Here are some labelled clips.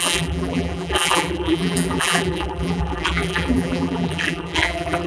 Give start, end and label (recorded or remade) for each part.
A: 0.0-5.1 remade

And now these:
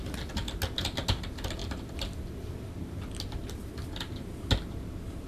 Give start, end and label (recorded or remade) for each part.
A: 0.0-1.6 recorded; 1.6-2.7 remade; 2.7-5.3 recorded

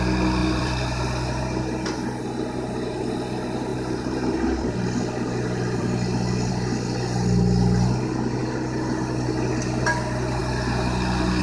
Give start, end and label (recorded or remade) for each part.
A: 0.0-0.4 recorded; 0.4-1.4 remade; 1.4-3.7 recorded; 3.7-6.5 remade; 6.5-11.4 recorded

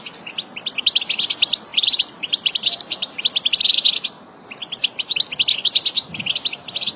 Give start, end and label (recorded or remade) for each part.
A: 0.0-1.7 recorded; 1.7-3.2 remade; 3.2-4.6 recorded; 4.6-5.3 remade; 5.3-7.0 recorded